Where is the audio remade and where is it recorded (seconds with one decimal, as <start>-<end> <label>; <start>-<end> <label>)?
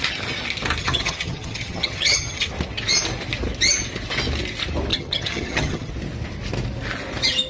0.0-0.8 recorded; 0.8-2.5 remade; 2.5-4.9 recorded; 4.9-5.9 remade; 5.9-7.5 recorded